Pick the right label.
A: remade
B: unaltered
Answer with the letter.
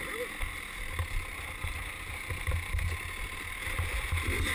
B